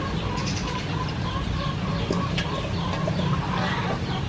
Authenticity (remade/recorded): remade